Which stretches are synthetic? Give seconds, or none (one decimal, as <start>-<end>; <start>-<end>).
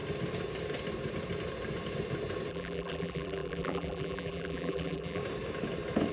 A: 2.5-5.2